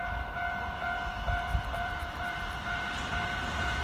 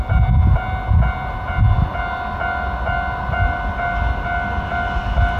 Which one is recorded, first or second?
second